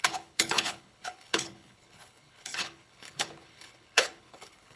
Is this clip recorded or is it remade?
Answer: remade